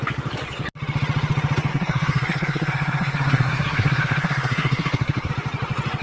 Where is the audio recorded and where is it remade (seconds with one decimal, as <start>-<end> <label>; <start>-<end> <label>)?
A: 0.0-1.7 recorded; 1.7-5.3 remade; 5.3-6.0 recorded